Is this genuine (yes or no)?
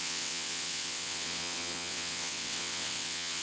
no